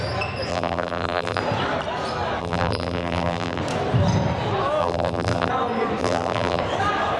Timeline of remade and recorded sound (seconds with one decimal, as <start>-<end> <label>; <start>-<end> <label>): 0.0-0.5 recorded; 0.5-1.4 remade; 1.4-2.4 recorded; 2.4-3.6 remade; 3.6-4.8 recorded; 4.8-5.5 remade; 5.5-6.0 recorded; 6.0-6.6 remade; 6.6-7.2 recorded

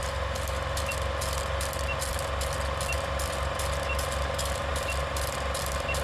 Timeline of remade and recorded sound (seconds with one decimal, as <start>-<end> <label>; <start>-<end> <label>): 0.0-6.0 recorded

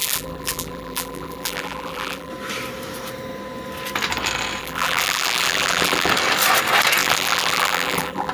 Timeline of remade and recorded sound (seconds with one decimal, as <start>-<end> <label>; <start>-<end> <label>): 0.0-2.3 remade; 2.3-4.6 recorded; 4.6-6.1 remade; 6.1-7.0 recorded; 7.0-8.3 remade